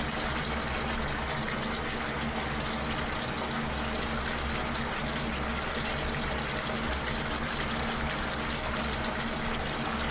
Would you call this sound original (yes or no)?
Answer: yes